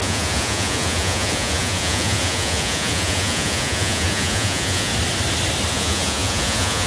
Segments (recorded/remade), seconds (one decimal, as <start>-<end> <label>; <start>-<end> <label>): 0.0-4.9 remade; 4.9-5.7 recorded; 5.7-6.9 remade